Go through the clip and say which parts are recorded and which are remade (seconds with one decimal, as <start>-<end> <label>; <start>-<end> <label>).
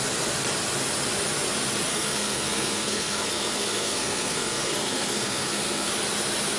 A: 0.0-1.9 recorded; 1.9-5.9 remade; 5.9-6.6 recorded